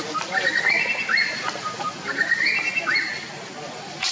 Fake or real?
real